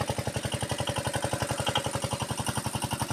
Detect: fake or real real